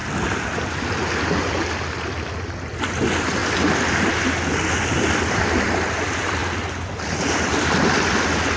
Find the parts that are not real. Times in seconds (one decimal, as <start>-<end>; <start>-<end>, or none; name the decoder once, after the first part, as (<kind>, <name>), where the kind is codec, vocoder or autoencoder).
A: none

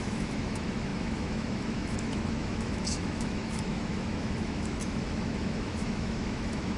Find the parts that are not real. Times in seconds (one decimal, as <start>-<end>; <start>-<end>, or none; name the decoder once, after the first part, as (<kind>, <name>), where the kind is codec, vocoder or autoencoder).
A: 0.0-6.8 (autoencoder, DAC-VAE)

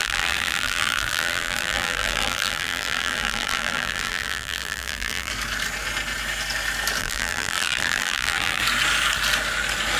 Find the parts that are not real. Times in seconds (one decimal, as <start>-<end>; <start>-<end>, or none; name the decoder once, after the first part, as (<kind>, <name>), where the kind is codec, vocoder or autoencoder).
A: 0.0-5.3 (vocoder, BigVGAN v2); 7.0-8.6

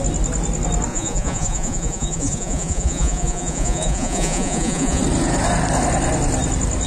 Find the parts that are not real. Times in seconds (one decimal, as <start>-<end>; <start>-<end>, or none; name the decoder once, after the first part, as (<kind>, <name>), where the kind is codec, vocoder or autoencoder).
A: 0.9-5.0 (vocoder, Vocos)

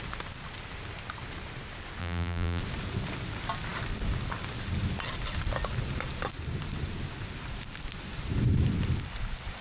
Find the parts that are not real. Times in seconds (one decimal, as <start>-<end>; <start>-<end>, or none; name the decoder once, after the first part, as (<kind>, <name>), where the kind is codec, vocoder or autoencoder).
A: 2.0-2.6 (vocoder, BigVGAN v2)

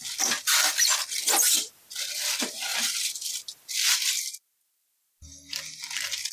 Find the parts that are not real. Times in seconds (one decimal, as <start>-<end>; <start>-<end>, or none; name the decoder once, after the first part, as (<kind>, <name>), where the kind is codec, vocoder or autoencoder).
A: 1.0-1.7 (vocoder, BigVGAN v2); 2.7-6.3

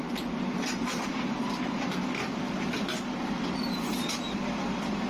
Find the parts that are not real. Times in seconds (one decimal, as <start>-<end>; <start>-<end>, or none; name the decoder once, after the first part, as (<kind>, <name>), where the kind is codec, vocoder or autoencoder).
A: 0.0-2.0 (vocoder, BigVGAN v2)